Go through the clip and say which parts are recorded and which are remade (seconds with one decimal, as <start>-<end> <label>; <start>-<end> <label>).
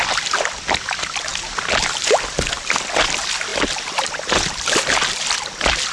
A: 0.0-5.9 recorded